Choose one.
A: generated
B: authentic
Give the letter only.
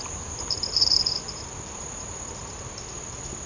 A